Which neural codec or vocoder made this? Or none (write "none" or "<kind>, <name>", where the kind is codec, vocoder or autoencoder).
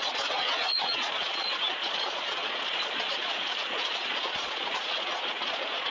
vocoder, Vocos